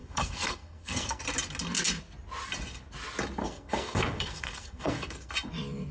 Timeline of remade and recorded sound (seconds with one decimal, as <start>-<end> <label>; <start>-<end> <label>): 0.0-1.2 remade; 1.2-3.4 recorded; 3.4-5.3 remade; 5.3-5.9 recorded